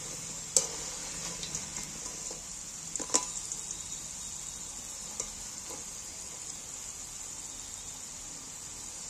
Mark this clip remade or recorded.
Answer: recorded